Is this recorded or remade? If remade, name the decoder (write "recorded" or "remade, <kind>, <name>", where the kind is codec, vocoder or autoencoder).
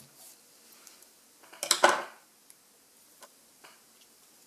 recorded